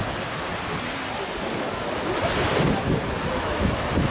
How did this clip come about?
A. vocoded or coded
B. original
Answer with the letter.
B